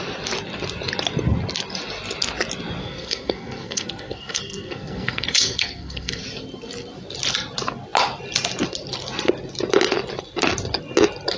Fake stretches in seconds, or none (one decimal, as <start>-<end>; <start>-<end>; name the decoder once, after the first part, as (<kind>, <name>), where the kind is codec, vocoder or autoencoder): 2.8-6.2 (codec, SNAC)